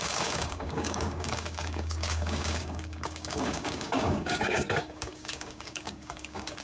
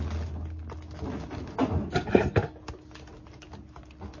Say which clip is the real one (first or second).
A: second